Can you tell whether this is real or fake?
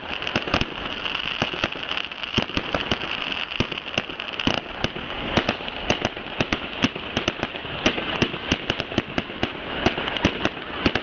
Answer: real